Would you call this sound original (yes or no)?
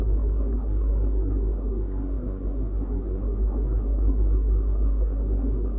no